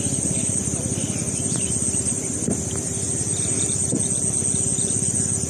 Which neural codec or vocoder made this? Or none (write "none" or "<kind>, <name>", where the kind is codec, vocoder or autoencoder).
none